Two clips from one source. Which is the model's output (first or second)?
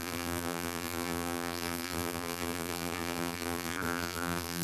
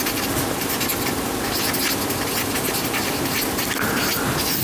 first